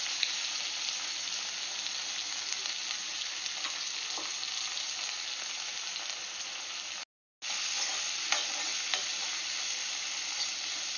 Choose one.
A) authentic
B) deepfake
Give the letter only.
A